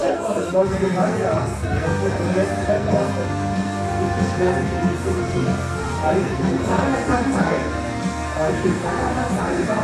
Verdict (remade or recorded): remade